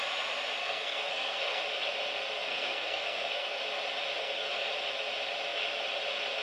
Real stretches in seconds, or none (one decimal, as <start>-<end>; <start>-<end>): 0.0-0.6; 1.6-2.4; 3.6-4.2; 4.7-6.4